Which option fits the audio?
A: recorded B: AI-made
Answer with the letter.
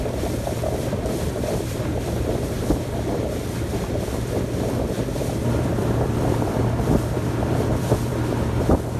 B